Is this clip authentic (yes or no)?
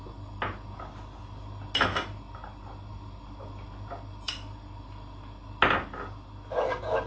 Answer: yes